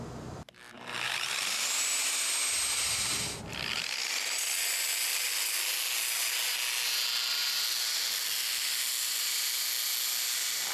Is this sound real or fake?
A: real